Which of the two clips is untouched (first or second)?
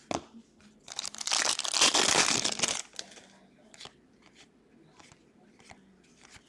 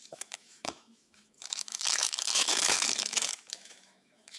first